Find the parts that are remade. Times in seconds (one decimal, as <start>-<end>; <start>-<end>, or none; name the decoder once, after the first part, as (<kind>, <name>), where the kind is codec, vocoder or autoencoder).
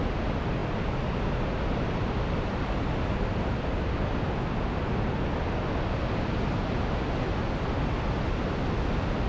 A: none